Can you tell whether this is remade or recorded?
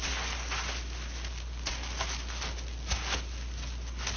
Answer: recorded